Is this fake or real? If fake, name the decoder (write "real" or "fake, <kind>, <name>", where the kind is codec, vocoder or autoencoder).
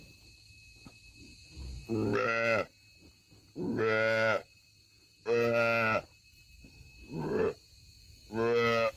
real